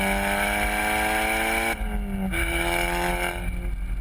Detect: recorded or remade recorded